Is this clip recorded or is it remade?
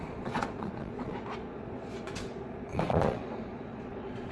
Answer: remade